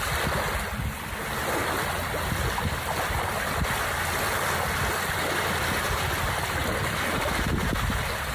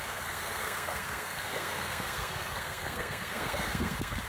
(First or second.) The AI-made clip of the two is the second